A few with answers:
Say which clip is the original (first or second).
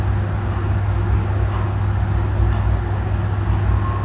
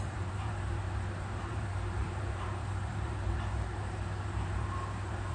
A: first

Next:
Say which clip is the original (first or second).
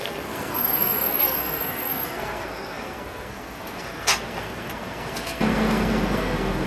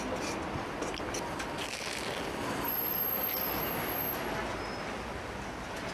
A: second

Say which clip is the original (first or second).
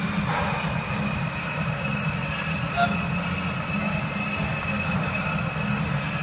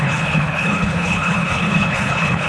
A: first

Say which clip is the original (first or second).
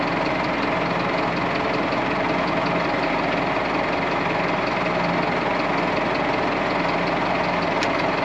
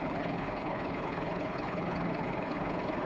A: first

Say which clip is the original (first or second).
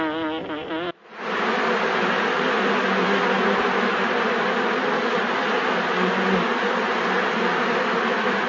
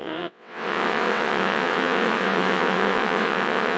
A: first